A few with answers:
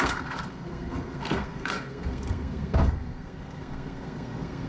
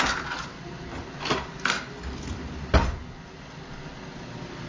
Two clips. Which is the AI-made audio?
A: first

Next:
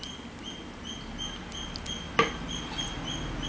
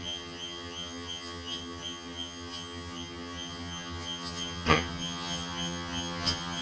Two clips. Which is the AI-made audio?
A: second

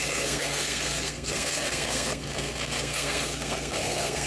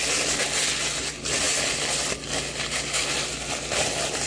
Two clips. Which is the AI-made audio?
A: first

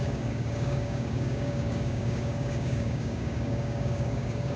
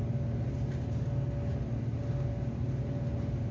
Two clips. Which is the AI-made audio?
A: first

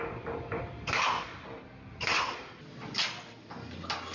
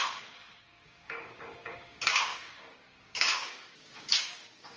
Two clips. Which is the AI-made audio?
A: second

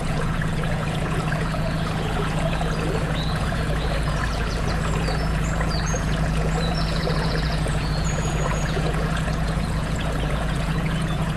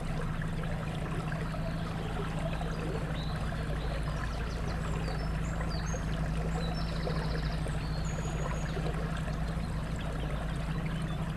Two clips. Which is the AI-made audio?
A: first